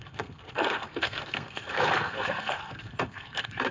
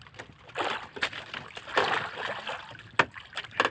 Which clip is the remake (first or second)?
first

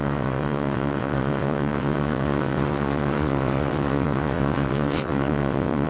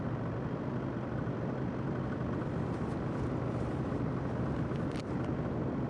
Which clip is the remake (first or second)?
first